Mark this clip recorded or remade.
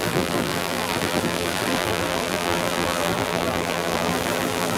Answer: remade